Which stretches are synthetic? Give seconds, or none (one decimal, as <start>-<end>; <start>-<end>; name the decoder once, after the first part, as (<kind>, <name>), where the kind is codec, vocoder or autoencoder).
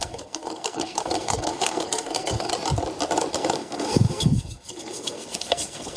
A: 0.0-2.5 (codec, SNAC); 3.3-6.0